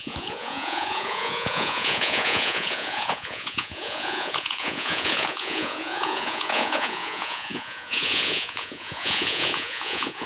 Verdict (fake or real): fake